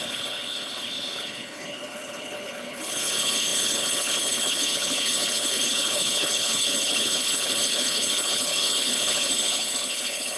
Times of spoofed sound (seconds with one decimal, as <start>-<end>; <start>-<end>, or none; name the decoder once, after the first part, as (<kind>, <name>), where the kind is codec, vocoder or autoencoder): 0.0-10.4 (codec, HILCodec)